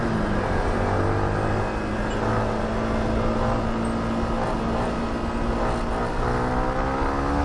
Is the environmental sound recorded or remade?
recorded